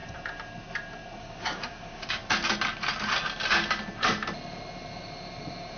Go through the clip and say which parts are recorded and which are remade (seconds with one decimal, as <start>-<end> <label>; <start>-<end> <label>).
0.0-1.2 recorded; 1.2-2.2 remade; 2.2-5.8 recorded